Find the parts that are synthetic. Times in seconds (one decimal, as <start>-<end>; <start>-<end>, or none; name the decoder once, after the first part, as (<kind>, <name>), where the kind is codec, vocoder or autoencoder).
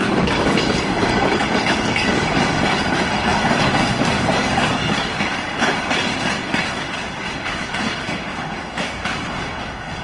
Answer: 0.0-10.0 (codec, DAC)